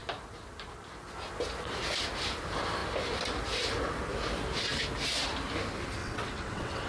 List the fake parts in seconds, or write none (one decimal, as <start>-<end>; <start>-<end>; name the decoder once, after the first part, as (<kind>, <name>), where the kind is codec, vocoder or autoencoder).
6.0-6.9 (vocoder, WaveNeXt)